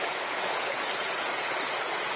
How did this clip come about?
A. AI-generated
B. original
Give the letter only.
A